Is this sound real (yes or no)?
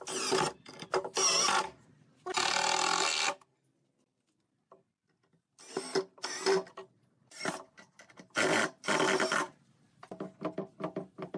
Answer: yes